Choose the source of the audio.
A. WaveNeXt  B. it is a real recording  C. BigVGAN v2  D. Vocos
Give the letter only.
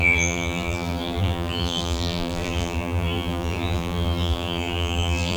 C